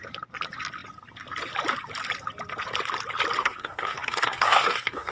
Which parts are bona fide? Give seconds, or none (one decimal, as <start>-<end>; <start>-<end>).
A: 0.0-3.4